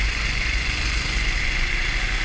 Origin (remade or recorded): remade